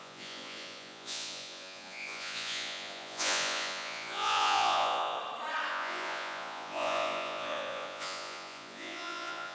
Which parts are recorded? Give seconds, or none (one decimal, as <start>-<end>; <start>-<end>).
5.2-5.7